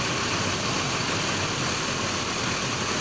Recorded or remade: recorded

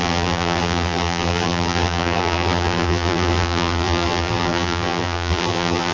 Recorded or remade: remade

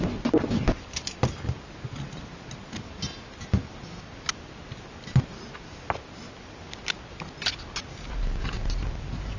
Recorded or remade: recorded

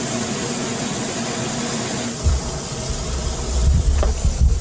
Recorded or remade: remade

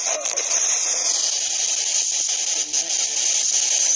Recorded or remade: recorded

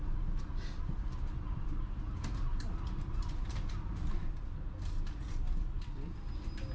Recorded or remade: recorded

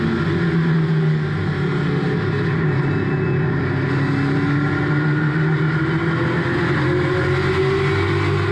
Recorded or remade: recorded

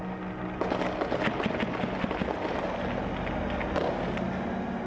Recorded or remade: recorded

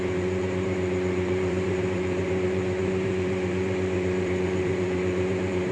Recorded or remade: remade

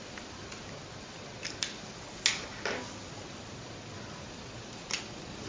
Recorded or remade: recorded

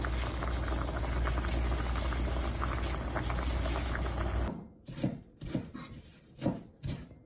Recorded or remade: recorded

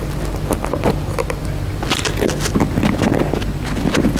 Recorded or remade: recorded